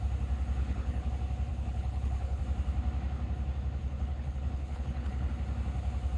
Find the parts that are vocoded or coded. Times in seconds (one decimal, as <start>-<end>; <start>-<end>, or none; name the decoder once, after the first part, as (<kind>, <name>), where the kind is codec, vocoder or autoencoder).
0.6-1.1 (codec, HILCodec); 1.5-2.4; 3.8-5.3